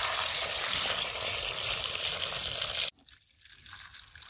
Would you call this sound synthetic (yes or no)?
no